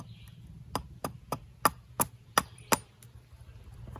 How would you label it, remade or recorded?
recorded